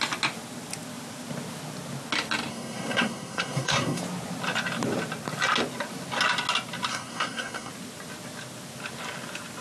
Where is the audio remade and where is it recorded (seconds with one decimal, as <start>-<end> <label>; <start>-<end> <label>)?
0.0-2.5 recorded; 2.5-4.0 remade; 4.0-6.9 recorded; 6.9-7.7 remade; 7.7-9.6 recorded